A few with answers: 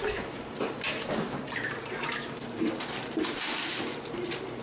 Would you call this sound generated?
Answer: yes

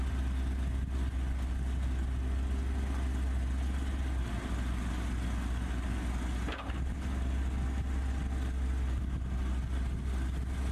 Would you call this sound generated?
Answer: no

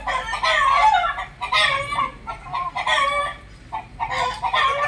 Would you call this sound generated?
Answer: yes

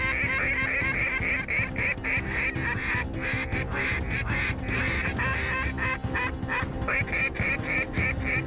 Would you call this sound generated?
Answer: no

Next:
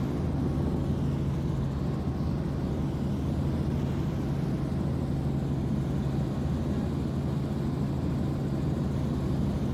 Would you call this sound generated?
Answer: no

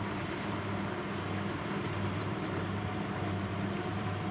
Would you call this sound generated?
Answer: yes